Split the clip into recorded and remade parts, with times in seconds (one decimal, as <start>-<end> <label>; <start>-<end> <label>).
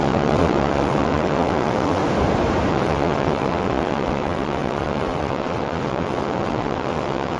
0.0-2.0 remade; 2.0-2.7 recorded; 2.7-7.4 remade